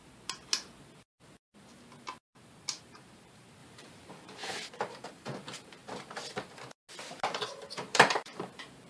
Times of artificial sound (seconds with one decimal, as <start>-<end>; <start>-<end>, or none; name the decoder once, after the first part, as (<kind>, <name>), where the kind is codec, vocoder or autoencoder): 2.8-5.8 (vocoder, BigVGAN v2); 7.3-8.9